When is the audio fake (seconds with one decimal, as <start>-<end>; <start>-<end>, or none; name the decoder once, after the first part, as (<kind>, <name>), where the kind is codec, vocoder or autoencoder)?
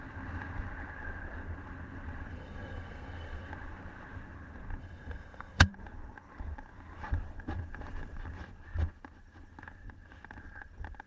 2.3-3.5 (codec, SNAC); 4.8-5.7